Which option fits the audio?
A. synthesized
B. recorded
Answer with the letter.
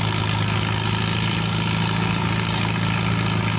B